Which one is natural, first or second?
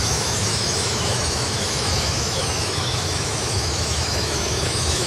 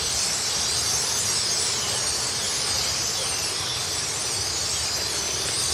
second